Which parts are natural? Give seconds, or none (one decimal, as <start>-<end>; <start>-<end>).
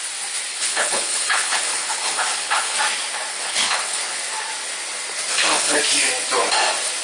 0.0-0.5; 2.8-3.3; 4.2-5.3; 5.8-7.0